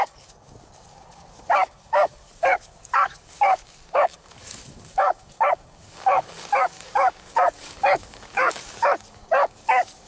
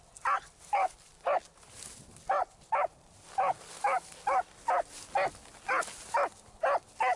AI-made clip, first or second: first